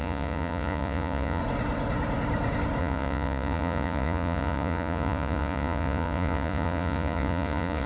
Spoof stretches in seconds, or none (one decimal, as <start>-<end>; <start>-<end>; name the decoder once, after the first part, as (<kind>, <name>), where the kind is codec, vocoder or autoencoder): 0.0-1.4 (vocoder, Vocos); 2.8-7.9